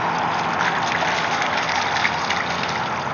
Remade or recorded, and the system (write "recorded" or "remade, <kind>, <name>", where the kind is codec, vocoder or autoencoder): recorded